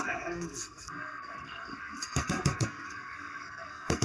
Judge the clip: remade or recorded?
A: remade